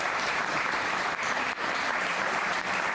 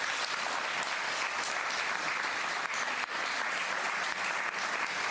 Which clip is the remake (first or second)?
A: first